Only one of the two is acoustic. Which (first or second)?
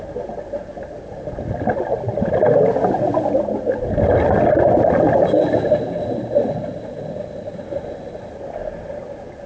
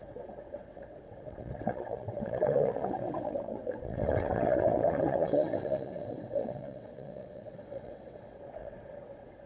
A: first